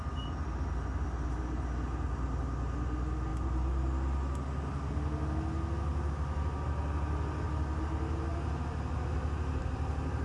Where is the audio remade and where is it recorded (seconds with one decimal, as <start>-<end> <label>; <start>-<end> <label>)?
0.0-10.2 recorded